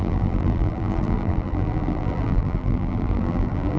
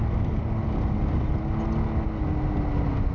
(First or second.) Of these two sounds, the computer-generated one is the first